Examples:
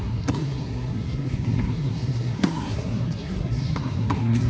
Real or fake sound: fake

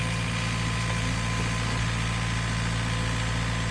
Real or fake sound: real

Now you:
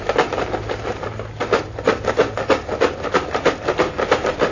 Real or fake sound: real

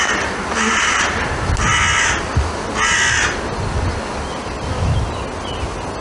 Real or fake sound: real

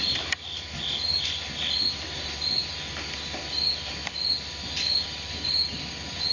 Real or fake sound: real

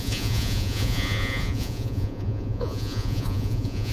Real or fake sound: fake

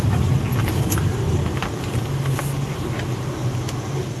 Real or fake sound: real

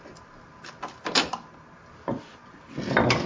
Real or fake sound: real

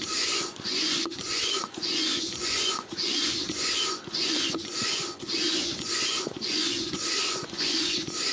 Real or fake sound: fake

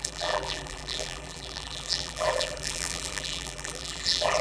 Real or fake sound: fake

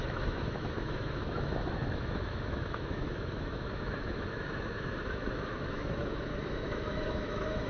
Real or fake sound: fake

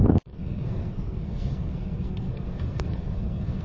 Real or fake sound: fake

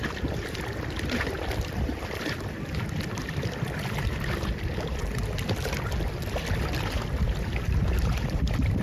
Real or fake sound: real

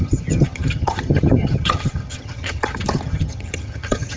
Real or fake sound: fake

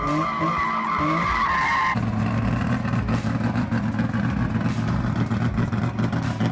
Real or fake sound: real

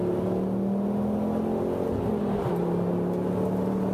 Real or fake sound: real